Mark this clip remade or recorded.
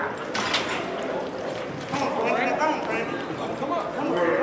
recorded